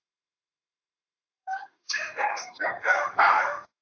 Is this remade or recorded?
remade